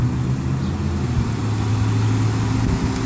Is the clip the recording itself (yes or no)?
yes